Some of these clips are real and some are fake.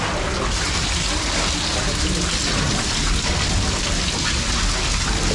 real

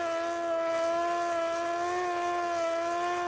real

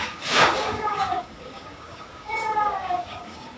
fake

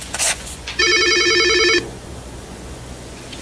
fake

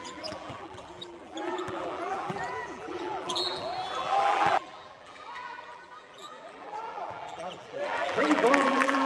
fake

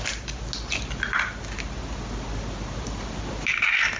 real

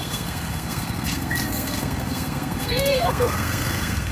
fake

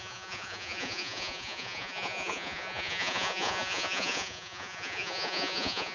fake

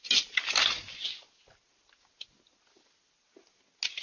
real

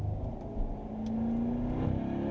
real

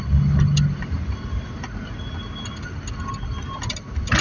real